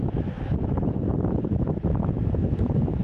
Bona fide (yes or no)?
no